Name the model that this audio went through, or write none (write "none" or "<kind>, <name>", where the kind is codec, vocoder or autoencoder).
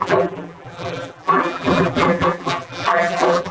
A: vocoder, BigVGAN v2